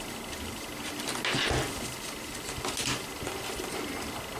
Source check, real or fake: real